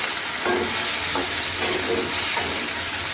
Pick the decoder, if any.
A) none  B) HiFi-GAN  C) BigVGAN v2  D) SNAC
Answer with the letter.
A